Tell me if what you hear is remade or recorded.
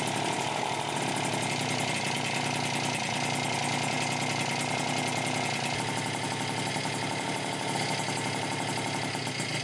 recorded